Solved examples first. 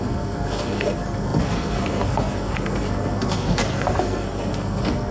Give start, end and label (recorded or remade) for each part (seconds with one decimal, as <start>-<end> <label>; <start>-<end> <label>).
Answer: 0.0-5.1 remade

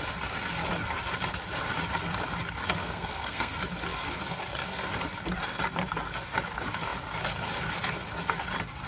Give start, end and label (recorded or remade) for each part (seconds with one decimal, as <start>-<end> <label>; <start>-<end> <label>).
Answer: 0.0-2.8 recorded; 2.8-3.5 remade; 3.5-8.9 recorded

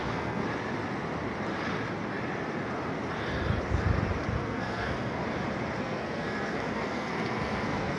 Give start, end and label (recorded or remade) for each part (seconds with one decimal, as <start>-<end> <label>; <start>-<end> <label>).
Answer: 0.0-0.4 remade; 0.4-4.4 recorded; 4.4-5.2 remade; 5.2-5.8 recorded; 5.8-8.0 remade

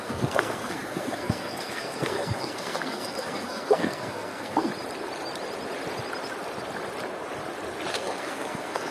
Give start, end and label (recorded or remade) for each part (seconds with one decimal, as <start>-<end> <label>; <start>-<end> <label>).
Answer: 0.0-4.7 remade; 4.7-7.9 recorded; 7.9-8.9 remade